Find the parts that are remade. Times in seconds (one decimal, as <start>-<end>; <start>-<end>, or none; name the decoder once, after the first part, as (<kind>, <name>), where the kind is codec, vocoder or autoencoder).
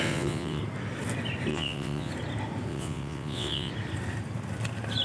0.0-0.6 (vocoder, WaveNeXt); 1.5-2.1; 2.7-3.7